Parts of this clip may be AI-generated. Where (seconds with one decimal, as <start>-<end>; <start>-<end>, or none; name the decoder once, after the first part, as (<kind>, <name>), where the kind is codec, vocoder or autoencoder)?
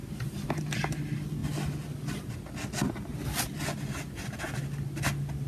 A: 0.0-0.5 (vocoder, BigVGAN v2)